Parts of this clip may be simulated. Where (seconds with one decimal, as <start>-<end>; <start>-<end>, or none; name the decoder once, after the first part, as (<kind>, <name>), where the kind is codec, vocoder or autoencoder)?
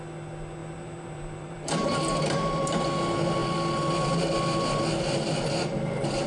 0.6-2.8 (vocoder, BigVGAN v2)